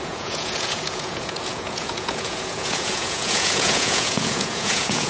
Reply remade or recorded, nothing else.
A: remade